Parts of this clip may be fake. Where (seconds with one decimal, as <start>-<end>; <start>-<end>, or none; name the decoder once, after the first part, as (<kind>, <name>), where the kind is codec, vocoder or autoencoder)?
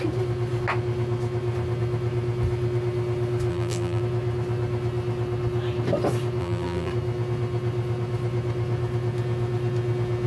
3.5-4.0 (vocoder, BigVGAN v2); 6.4-6.9